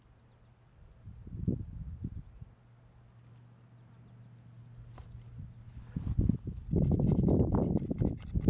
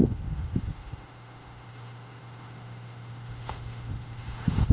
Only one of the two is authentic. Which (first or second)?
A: first